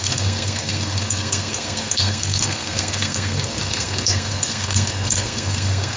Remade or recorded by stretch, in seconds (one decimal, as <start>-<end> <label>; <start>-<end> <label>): 0.0-6.0 remade